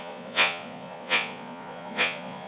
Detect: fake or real fake